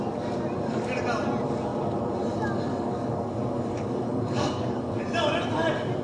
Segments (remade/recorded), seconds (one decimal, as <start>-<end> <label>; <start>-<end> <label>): 0.0-2.7 recorded; 2.7-5.0 remade; 5.0-6.0 recorded

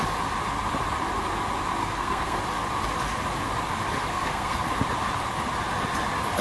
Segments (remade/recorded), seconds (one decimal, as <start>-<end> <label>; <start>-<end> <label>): 0.0-1.8 recorded; 1.8-2.4 remade; 2.4-4.1 recorded; 4.1-4.7 remade; 4.7-6.4 recorded

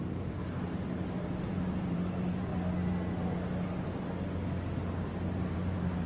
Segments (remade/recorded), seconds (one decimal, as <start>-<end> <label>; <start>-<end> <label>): 0.0-2.5 remade; 2.5-5.2 recorded; 5.2-6.1 remade

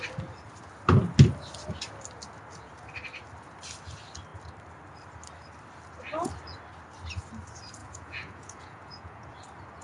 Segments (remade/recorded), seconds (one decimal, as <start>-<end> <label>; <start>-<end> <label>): 0.0-7.8 recorded; 7.8-9.3 remade; 9.3-9.8 recorded

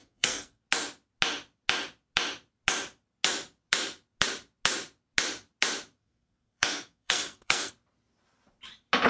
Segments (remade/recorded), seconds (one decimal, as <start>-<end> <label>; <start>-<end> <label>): 0.0-0.6 remade; 0.6-6.0 recorded; 6.0-7.7 remade; 7.7-9.1 recorded

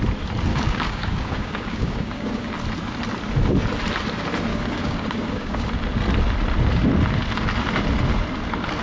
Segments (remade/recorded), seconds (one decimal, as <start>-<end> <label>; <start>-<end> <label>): 0.0-0.5 recorded; 0.5-2.5 remade; 2.5-4.5 recorded; 4.5-5.7 remade; 5.7-8.8 recorded

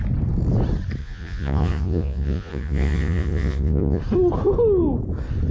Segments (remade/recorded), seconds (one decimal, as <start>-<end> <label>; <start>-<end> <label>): 0.0-1.0 recorded; 1.0-4.0 remade; 4.0-5.5 recorded